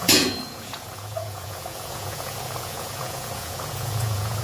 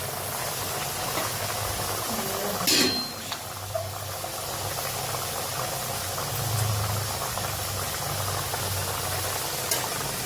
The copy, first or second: first